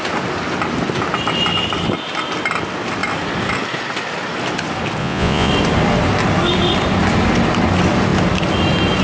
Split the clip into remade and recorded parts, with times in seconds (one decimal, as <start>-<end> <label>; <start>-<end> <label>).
0.0-5.0 recorded; 5.0-5.5 remade; 5.5-9.0 recorded